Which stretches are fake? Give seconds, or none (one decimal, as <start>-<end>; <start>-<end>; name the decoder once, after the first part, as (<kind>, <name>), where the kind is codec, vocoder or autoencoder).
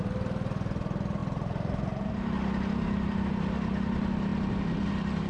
none